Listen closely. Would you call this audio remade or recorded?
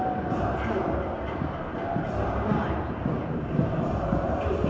remade